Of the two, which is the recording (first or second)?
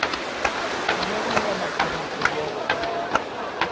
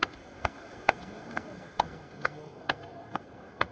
first